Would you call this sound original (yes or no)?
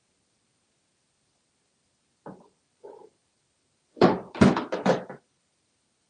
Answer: no